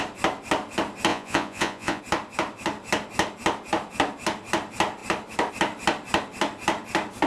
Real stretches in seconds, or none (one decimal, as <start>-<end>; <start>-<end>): 0.0-1.1; 2.0-7.3

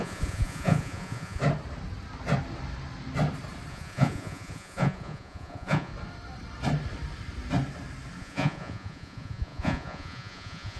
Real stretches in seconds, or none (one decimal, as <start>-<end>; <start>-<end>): 1.4-3.7; 5.9-8.2

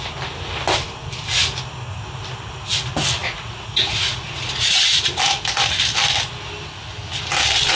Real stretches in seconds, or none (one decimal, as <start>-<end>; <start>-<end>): 0.0-3.2; 5.2-7.8

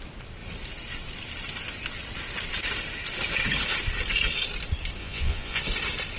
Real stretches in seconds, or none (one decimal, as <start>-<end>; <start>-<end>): 0.0-5.0; 5.6-6.2

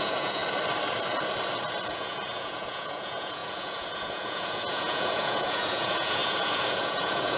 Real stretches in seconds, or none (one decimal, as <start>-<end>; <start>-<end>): 0.4-1.9

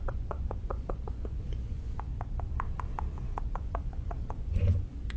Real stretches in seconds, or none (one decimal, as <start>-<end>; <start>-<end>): 2.1-3.4

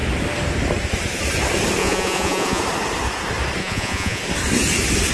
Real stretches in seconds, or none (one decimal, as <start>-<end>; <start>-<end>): 0.0-1.8; 2.6-3.6; 4.2-5.1

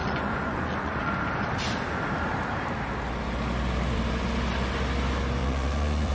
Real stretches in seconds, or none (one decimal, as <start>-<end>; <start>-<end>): 1.1-5.4